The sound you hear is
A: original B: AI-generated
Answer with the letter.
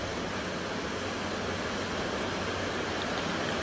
A